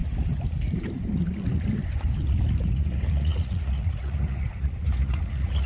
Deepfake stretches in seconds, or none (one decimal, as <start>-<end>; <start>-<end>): 2.6-5.7